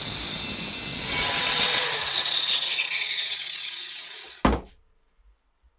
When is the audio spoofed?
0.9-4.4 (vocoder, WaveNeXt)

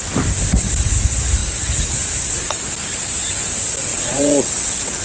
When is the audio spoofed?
3.9-5.0 (vocoder, WaveNeXt)

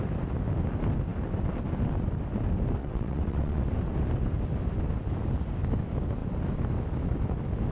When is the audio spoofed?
2.8-3.6 (vocoder, WaveNeXt)

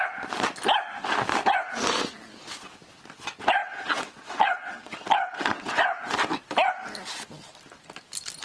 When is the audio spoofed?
3.6-6.0 (vocoder, WaveNeXt)

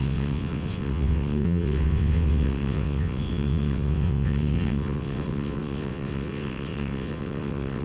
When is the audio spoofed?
0.0-7.8 (vocoder, WaveNeXt)

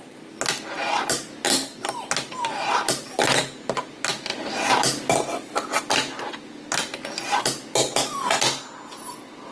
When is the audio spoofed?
none

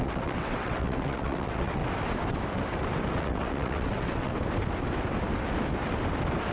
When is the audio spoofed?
0.0-1.8 (vocoder, WaveNeXt); 3.1-4.3

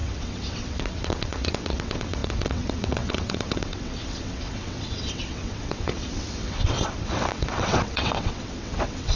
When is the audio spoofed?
0.0-9.2 (vocoder, WaveNeXt)